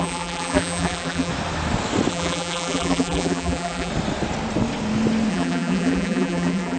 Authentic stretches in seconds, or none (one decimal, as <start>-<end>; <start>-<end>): 1.3-2.1; 3.9-5.3